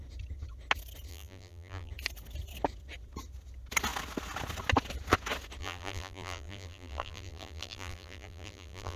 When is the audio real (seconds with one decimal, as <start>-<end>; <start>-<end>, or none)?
0.0-1.1; 1.9-5.6

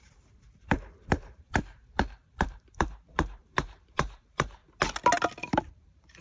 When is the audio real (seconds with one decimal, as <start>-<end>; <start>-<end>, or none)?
4.6-5.6

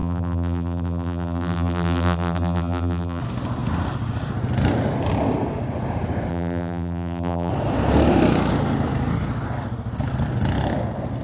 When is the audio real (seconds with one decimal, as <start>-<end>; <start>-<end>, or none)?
3.2-6.3; 7.5-11.2

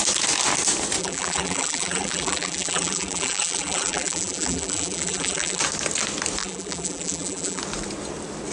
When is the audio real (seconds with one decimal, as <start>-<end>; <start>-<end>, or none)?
0.0-1.0; 5.6-6.4; 7.6-8.5